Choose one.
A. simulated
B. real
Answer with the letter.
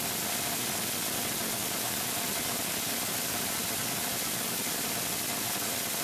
A